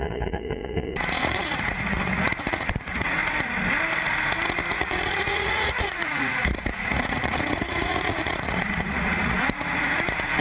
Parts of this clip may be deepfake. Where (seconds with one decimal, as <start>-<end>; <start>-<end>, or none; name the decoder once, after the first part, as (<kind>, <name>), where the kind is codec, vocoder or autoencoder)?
0.0-3.2 (vocoder, Vocos); 4.7-10.4